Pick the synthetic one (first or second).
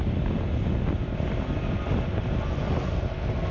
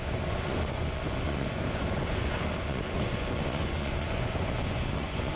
second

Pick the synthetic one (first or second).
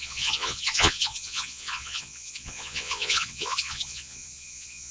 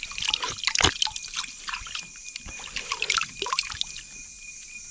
first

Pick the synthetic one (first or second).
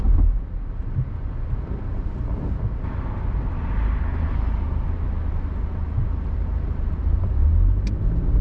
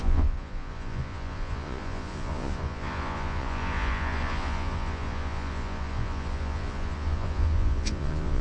second